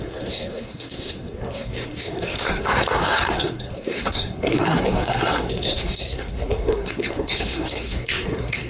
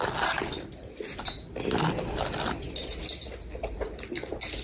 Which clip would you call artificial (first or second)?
first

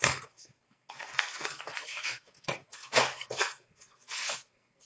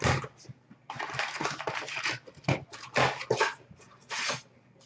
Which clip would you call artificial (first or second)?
first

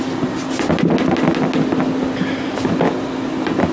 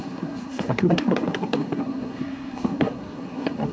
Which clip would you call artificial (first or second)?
second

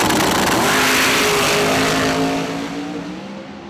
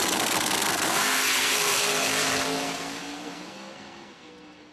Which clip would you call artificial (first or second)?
second